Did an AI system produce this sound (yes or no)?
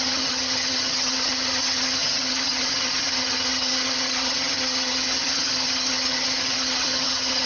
yes